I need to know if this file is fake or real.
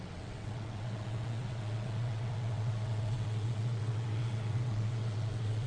fake